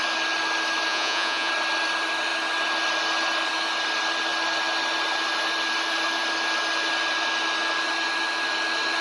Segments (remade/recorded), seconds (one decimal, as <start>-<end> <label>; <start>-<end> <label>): 0.0-0.9 recorded; 0.9-1.5 remade; 1.5-9.0 recorded